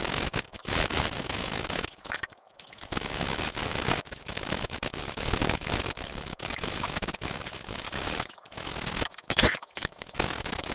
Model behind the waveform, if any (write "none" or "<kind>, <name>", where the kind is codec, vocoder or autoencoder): autoencoder, DAC-VAE